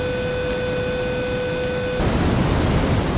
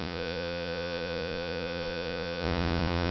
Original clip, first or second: first